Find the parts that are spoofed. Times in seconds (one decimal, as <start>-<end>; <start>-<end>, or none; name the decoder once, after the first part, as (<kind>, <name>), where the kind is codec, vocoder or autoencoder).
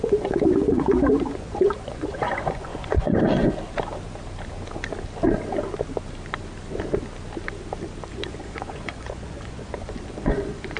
0.0-3.4 (vocoder, Vocos); 8.1-10.8